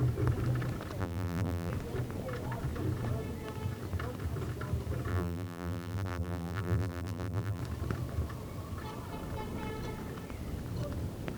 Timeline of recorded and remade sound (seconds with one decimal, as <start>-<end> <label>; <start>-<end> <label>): 0.0-1.0 recorded; 1.0-1.7 remade; 1.7-5.1 recorded; 5.1-7.6 remade; 7.6-11.4 recorded